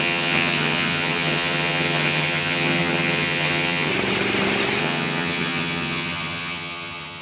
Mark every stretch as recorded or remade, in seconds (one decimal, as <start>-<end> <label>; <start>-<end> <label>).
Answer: 0.0-3.9 remade; 3.9-4.8 recorded; 4.8-7.2 remade